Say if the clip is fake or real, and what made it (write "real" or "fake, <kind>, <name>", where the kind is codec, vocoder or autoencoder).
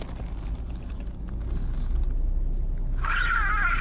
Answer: real